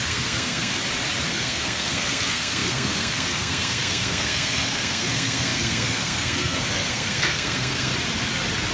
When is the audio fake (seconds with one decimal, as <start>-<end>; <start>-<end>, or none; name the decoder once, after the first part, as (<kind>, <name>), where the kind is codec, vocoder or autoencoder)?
0.0-0.8 (codec, SNAC); 1.3-7.9